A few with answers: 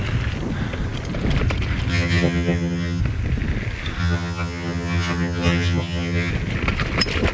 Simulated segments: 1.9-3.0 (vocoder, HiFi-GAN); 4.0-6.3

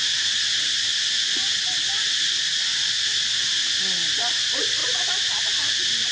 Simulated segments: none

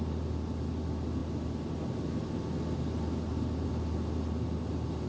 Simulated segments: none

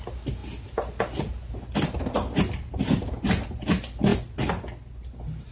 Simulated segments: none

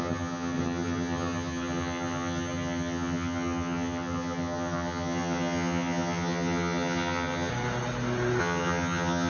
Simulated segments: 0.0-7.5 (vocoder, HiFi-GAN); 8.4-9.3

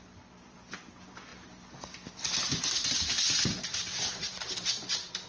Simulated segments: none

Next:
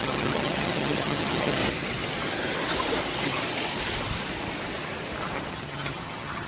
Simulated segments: 0.0-1.6 (vocoder, HiFi-GAN); 5.5-6.5

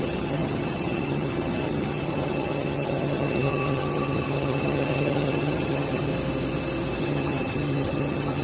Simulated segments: 0.0-6.1 (vocoder, HiFi-GAN); 7.0-8.4